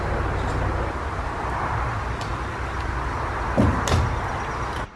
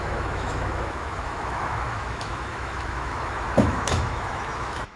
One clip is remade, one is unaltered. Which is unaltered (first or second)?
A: first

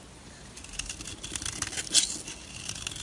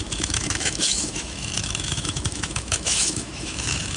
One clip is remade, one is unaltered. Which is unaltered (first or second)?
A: first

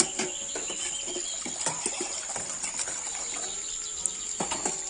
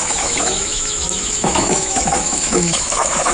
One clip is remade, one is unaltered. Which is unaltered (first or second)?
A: first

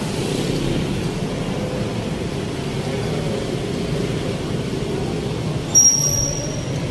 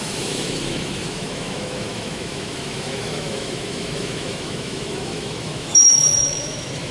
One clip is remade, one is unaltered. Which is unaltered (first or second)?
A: first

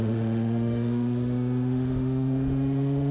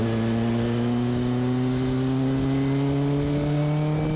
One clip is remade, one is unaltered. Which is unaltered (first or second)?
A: second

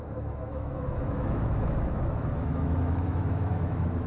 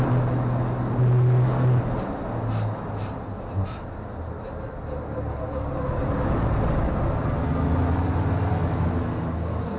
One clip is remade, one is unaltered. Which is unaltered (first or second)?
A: second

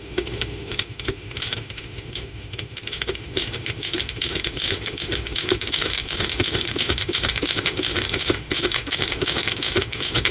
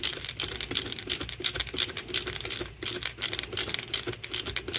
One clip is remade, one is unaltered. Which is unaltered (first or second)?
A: second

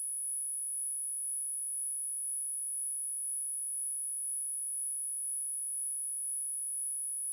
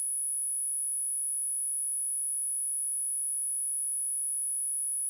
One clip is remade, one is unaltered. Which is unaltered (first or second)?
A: second